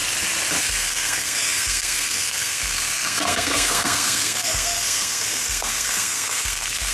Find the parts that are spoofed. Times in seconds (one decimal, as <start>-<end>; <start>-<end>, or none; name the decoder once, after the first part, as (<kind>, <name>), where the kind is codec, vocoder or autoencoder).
0.6-6.9 (codec, SNAC)